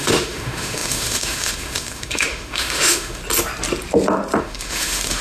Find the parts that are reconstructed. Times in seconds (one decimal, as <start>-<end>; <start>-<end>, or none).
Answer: 0.0-3.2; 4.4-5.2